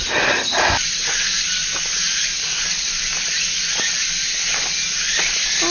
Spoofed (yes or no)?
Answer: no